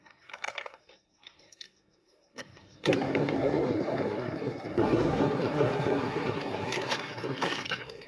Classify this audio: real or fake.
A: fake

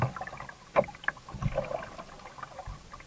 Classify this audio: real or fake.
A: real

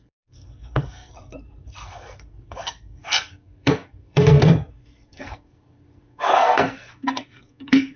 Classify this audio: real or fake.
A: fake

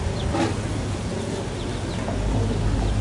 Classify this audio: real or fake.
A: real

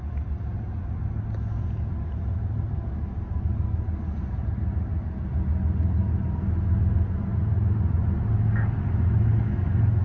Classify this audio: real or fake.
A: real